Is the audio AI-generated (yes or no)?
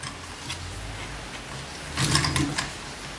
no